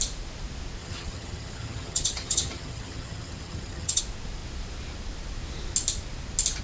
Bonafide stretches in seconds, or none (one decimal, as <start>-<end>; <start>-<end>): 0.0-0.8; 4.0-6.6